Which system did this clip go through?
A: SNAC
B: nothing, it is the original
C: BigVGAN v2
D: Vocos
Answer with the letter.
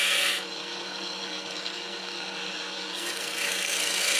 A